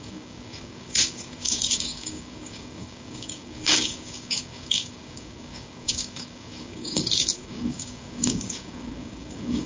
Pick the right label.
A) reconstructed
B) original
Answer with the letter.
A